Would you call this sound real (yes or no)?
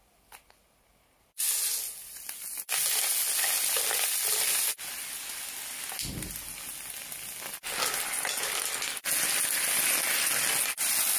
yes